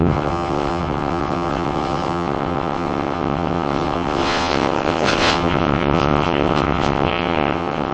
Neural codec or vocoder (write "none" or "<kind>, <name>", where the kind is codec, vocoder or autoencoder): vocoder, WaveNeXt